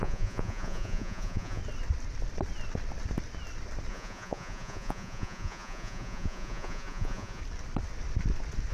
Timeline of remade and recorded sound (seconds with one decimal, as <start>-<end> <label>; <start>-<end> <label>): 0.0-1.6 remade; 1.6-3.9 recorded; 3.9-7.4 remade; 7.4-8.7 recorded